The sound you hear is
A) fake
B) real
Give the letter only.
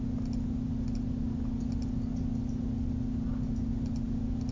B